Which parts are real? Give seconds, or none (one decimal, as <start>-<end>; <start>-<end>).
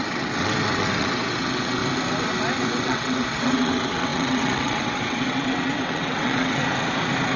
1.8-2.6; 6.6-7.4